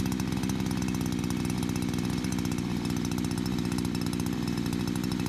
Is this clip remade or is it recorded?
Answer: recorded